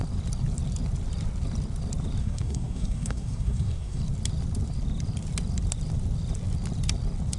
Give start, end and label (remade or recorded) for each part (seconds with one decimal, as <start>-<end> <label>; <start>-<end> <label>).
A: 0.0-2.2 recorded; 2.2-4.0 remade; 4.0-7.4 recorded